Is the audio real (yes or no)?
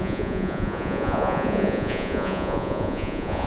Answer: no